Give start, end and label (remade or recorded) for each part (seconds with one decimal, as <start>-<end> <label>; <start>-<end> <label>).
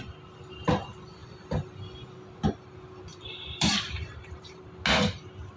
0.0-3.1 recorded; 3.1-4.6 remade; 4.6-5.6 recorded